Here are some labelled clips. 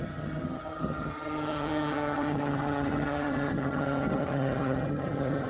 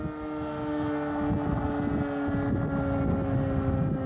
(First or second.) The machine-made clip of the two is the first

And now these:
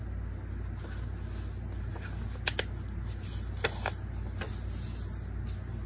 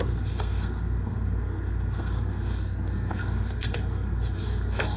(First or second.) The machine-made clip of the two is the second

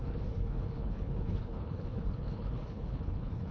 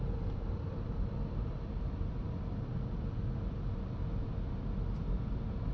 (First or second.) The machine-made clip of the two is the first